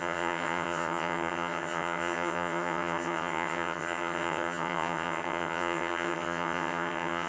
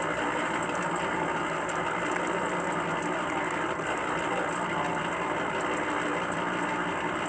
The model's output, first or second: first